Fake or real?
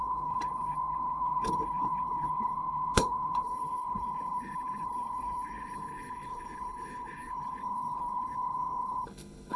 fake